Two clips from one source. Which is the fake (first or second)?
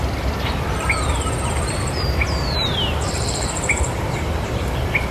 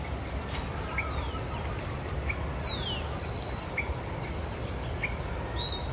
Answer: first